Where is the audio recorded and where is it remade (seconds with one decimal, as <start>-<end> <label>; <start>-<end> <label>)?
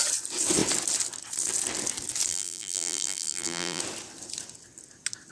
0.0-2.3 recorded; 2.3-3.8 remade; 3.8-5.3 recorded